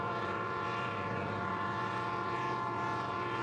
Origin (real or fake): fake